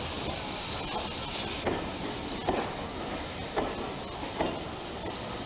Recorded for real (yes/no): yes